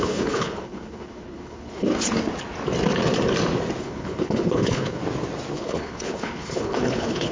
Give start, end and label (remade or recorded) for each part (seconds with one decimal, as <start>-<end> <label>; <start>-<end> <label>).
0.0-1.9 remade; 1.9-3.8 recorded; 3.8-5.0 remade; 5.0-5.5 recorded; 5.5-7.3 remade